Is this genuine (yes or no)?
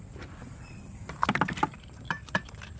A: no